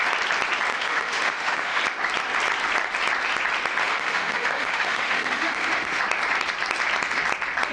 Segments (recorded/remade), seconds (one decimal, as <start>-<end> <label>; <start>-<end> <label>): 0.0-0.7 recorded; 0.7-1.8 remade; 1.8-3.8 recorded; 3.8-6.0 remade; 6.0-7.7 recorded